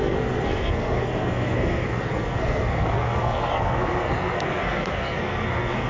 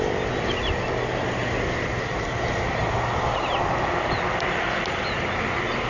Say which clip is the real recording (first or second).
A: second